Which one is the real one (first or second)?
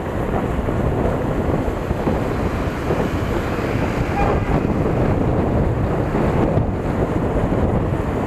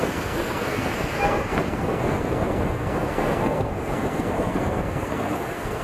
first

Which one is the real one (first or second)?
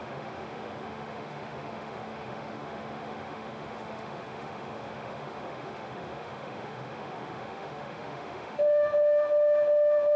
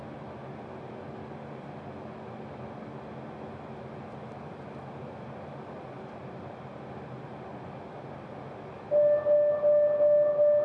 second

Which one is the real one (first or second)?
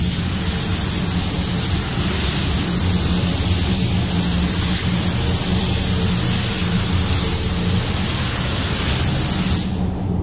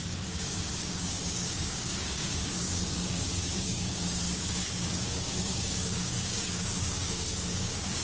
first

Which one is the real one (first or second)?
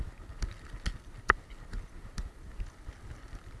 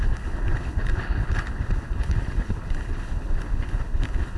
first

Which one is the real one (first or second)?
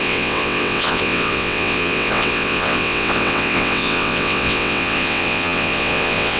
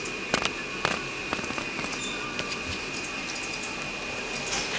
second